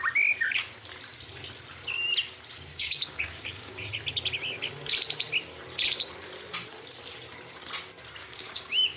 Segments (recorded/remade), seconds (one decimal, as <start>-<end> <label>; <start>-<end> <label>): 0.0-2.7 recorded; 2.7-3.9 remade; 3.9-8.2 recorded; 8.2-9.0 remade